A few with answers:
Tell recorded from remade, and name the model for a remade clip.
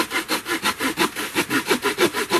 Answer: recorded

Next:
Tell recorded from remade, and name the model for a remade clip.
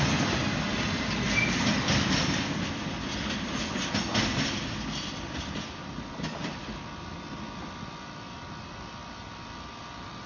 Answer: recorded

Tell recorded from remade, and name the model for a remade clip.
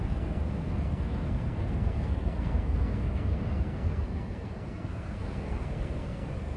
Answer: remade, codec, SNAC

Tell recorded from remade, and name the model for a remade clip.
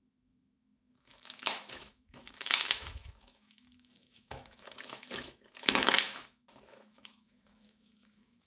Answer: remade, autoencoder, DAC-VAE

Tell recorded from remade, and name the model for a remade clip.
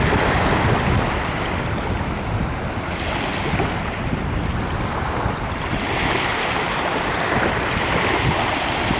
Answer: recorded